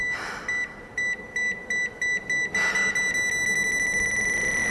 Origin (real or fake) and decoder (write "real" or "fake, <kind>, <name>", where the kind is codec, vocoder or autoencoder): real